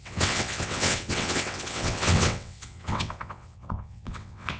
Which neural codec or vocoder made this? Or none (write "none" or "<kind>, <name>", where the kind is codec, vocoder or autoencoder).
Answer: vocoder, WaveNeXt